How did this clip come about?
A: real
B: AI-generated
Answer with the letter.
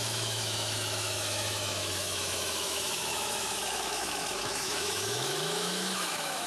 B